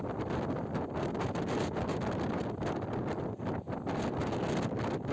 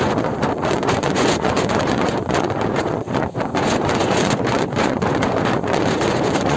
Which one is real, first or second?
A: first